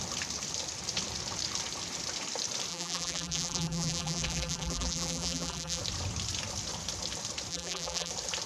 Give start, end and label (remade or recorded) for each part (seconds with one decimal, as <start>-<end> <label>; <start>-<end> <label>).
0.0-2.7 recorded; 2.7-5.8 remade; 5.8-7.5 recorded; 7.5-8.1 remade; 8.1-8.5 recorded

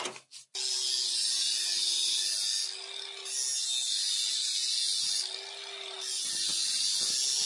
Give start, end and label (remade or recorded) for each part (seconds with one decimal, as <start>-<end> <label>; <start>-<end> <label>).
0.0-7.5 recorded

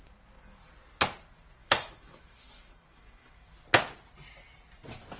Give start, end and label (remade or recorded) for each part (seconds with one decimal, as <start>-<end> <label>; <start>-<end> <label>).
0.0-1.6 recorded; 1.6-3.5 remade; 3.5-5.2 recorded

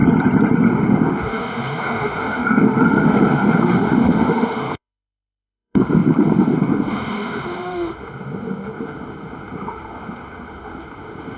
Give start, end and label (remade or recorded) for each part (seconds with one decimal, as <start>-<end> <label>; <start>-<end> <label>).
0.0-0.7 recorded; 0.7-11.4 remade

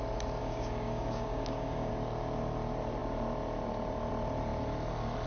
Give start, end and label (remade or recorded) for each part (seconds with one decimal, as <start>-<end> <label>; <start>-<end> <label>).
0.0-0.4 recorded; 0.4-1.9 remade; 1.9-5.3 recorded